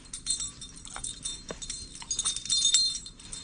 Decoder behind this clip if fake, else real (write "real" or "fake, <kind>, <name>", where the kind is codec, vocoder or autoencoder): real